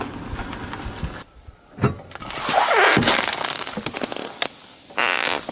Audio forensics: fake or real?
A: real